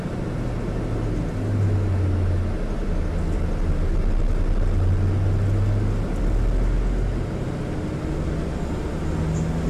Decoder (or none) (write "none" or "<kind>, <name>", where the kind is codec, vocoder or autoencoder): none